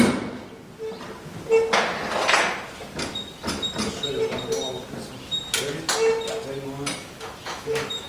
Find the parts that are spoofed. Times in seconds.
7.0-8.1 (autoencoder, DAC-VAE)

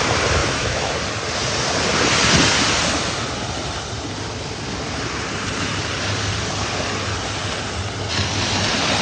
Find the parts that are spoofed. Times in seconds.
0.4-0.9 (autoencoder, DAC-VAE)

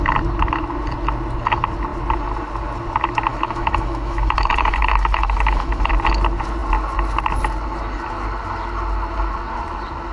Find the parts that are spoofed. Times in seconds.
3.3-5.9 (autoencoder, DAC-VAE)

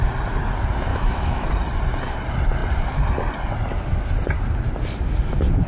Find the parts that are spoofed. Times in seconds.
0.9-1.5 (autoencoder, DAC-VAE)

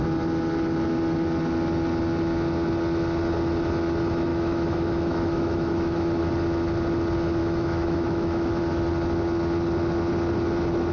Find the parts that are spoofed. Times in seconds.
4.3-6.2 (autoencoder, DAC-VAE); 7.4-8.6